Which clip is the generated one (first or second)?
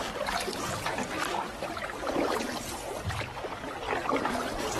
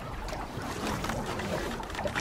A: second